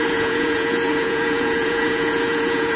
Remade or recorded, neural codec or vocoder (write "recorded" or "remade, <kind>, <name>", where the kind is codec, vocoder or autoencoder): remade, vocoder, Vocos